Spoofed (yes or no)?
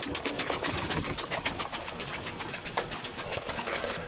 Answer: yes